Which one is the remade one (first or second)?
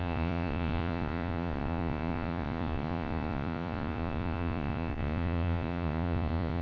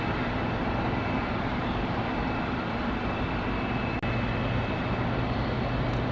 first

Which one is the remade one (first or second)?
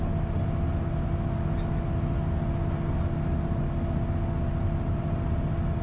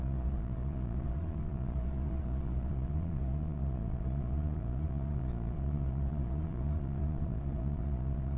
second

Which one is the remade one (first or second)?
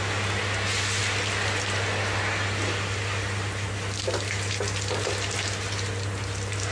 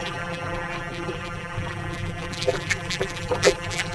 second